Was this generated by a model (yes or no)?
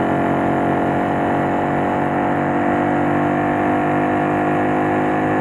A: no